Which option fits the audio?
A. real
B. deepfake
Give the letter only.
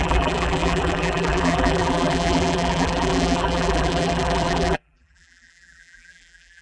B